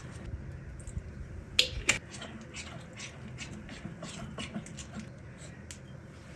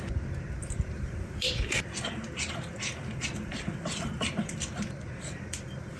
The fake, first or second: second